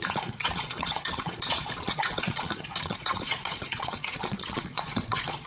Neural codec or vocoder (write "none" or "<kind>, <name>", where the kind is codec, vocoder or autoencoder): vocoder, Vocos